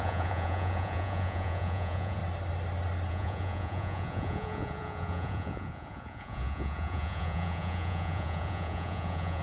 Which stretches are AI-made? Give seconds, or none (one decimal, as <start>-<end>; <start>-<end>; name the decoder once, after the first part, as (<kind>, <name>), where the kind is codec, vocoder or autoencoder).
0.0-2.2 (vocoder, Vocos); 3.1-9.4